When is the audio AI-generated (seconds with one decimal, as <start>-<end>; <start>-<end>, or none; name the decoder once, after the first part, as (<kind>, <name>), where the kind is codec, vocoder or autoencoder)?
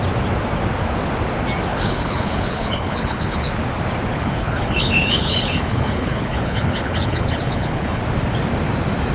1.7-3.5 (codec, HILCodec); 4.1-8.0